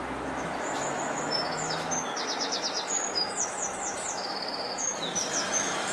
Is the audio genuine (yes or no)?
no